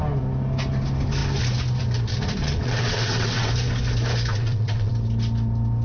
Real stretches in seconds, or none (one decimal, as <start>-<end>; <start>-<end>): 0.0-2.4; 3.5-4.3; 4.9-5.8